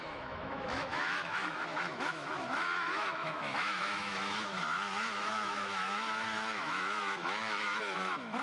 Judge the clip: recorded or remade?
remade